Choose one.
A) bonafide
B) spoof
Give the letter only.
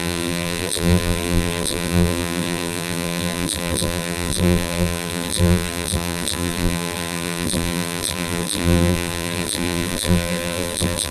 B